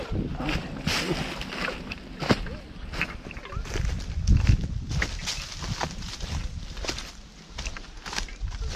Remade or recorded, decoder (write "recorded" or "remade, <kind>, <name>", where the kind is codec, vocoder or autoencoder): recorded